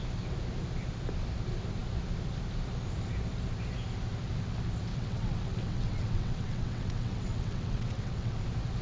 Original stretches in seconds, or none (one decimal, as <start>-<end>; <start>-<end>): 0.0-4.9; 8.4-8.8